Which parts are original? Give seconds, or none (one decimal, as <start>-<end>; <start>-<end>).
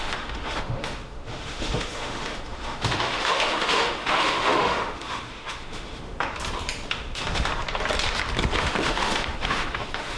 6.3-6.9; 7.5-8.6